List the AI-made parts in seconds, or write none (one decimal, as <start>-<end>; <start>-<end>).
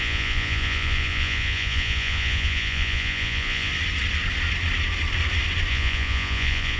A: 0.0-3.7; 5.7-6.8